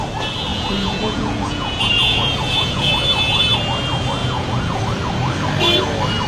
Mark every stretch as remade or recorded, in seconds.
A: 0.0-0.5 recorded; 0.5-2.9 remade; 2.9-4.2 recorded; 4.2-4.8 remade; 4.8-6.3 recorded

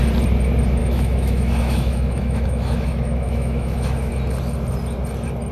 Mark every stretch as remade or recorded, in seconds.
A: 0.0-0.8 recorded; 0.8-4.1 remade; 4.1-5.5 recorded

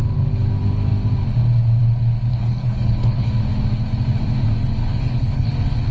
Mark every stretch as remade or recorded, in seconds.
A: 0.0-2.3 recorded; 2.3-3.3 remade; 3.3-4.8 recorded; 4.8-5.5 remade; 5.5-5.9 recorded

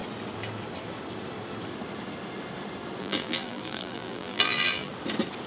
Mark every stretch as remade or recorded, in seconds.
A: 0.0-3.0 recorded; 3.0-4.9 remade; 4.9-5.5 recorded

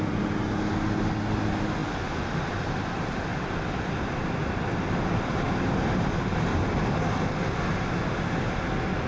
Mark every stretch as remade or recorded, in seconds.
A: 0.0-9.1 recorded